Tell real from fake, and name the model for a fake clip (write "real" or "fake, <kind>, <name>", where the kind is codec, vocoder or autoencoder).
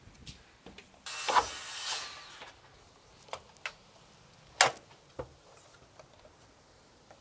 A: real